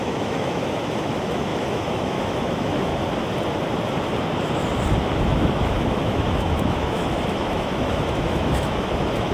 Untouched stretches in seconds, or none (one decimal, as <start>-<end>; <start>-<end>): 2.9-5.0